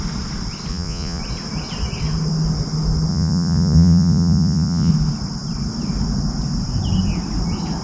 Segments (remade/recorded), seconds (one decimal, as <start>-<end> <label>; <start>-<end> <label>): 0.0-0.7 recorded; 0.7-1.2 remade; 1.2-3.1 recorded; 3.1-4.9 remade; 4.9-7.8 recorded

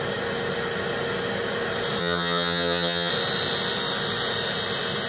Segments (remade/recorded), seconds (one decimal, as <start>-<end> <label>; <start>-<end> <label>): 0.0-2.0 recorded; 2.0-3.1 remade; 3.1-5.1 recorded